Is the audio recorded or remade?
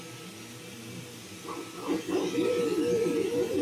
recorded